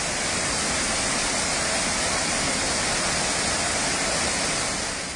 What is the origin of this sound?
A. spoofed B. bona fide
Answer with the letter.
B